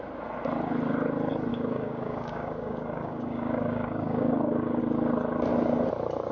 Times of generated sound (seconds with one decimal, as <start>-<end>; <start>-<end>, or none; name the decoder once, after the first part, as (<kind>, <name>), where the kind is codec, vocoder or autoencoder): 1.5-4.8 (codec, DAC)

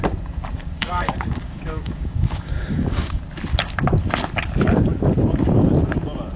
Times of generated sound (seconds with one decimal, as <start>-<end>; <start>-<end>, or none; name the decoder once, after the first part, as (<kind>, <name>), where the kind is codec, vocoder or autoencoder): 0.5-3.2 (codec, DAC)

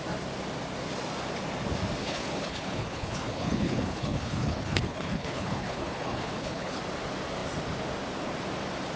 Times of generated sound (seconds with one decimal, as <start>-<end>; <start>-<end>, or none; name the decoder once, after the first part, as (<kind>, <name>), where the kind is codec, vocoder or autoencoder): 2.0-6.8 (codec, HILCodec)

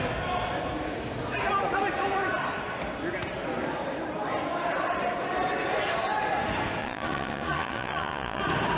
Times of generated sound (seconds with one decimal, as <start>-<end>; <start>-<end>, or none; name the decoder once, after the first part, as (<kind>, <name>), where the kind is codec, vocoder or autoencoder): 6.8-8.4 (vocoder, Vocos)

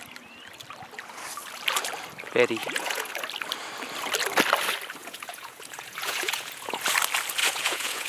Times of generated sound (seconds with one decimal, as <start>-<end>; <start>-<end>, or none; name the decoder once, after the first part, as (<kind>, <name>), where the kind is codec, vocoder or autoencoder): 2.6-3.1 (vocoder, Vocos); 5.0-6.8; 7.4-8.1

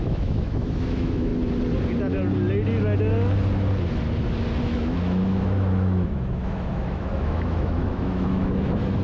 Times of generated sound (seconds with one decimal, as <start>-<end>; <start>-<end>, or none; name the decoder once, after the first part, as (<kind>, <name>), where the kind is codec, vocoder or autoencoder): 0.0-1.3 (autoencoder, DAC-VAE); 4.6-9.0